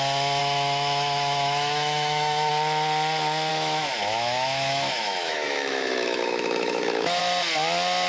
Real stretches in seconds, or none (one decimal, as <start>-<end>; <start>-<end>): 0.0-0.4; 2.5-3.5; 7.2-8.1